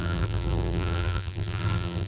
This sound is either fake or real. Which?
fake